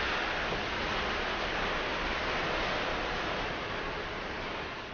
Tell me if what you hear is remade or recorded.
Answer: recorded